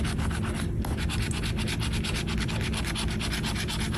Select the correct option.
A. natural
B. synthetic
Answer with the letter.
A